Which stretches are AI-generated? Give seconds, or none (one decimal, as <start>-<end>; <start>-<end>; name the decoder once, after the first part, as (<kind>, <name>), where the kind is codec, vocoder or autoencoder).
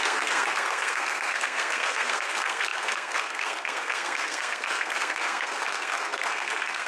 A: 0.0-6.9 (codec, SNAC)